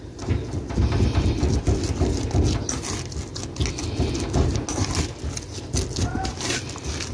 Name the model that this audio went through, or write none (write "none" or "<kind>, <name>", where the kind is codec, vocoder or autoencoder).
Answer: none